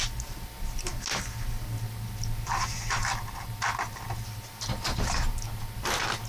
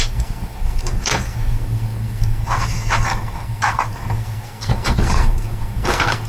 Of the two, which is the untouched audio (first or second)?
first